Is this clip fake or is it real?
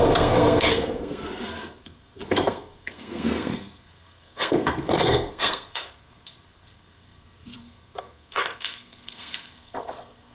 fake